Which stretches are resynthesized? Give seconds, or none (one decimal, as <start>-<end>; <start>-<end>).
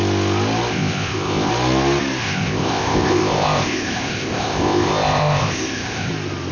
0.7-1.5; 2.2-6.1